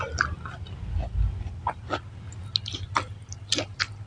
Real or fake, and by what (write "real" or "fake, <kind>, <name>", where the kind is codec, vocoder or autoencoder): real